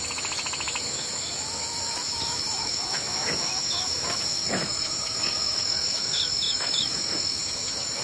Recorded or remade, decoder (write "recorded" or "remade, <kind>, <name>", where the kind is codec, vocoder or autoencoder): remade, autoencoder, DAC-VAE